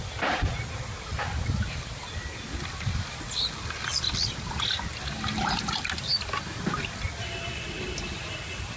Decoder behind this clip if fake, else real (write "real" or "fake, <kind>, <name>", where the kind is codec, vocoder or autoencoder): real